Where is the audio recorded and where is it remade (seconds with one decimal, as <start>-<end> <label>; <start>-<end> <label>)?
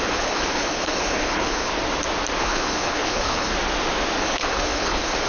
0.0-1.7 remade; 1.7-2.4 recorded; 2.4-3.5 remade; 3.5-4.2 recorded; 4.2-5.3 remade